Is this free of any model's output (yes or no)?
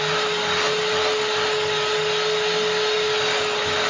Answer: yes